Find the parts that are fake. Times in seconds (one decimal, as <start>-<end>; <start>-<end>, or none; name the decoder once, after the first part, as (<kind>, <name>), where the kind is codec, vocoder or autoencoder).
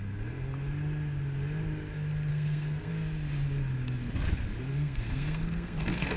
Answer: 2.3-2.9 (codec, SNAC); 4.7-6.2